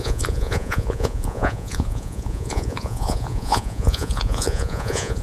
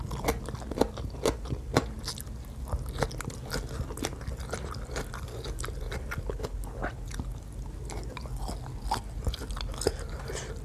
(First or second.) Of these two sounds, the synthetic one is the first